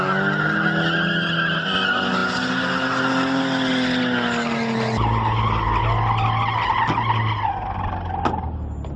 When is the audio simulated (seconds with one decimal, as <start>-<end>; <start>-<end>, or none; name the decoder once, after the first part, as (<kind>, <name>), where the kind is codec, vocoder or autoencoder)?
none